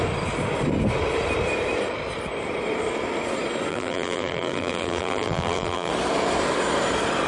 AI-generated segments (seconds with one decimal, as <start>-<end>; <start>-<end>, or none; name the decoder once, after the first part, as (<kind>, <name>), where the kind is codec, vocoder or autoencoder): 3.7-5.9 (vocoder, BigVGAN v2)